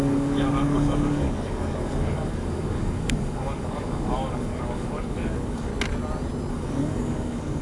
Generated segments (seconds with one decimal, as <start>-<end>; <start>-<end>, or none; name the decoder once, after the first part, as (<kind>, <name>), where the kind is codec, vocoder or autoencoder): 0.0-5.7 (codec, DAC); 6.5-7.6